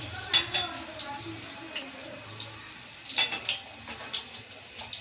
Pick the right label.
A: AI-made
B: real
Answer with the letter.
B